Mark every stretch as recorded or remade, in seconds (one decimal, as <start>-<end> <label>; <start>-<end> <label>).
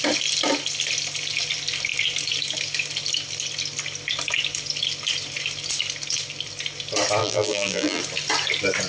0.0-7.2 recorded; 7.2-8.0 remade; 8.0-8.9 recorded